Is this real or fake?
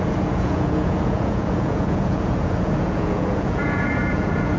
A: fake